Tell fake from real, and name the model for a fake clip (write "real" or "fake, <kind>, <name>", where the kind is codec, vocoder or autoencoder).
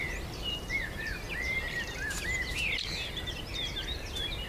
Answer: fake, vocoder, BigVGAN v2